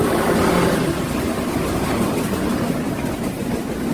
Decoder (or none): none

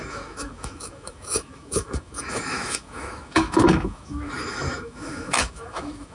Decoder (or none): autoencoder, DAC-VAE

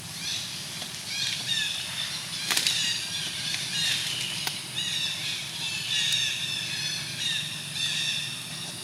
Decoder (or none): none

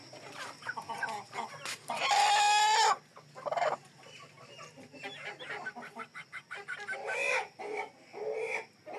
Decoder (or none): none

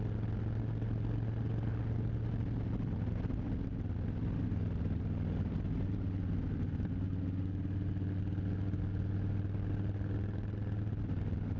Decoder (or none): none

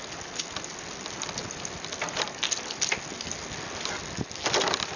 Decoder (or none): none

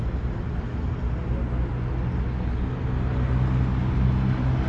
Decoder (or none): none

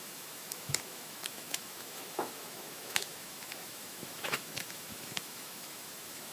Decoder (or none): autoencoder, DAC-VAE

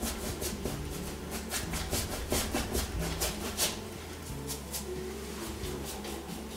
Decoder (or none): none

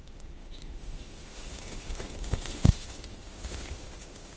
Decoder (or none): autoencoder, DAC-VAE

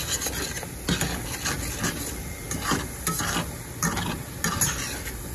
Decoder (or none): none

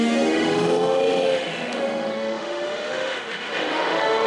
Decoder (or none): autoencoder, DAC-VAE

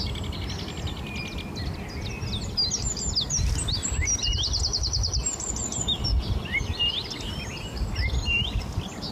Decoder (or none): none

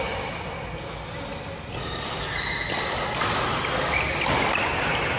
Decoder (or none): none